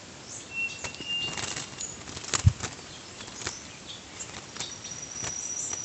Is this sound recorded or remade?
recorded